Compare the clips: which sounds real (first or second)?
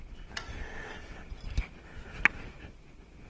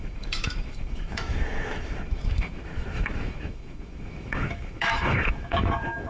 first